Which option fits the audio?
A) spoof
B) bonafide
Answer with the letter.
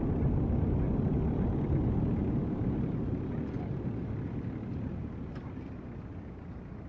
B